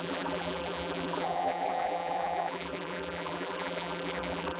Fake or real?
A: fake